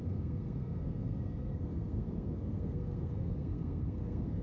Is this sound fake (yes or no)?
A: yes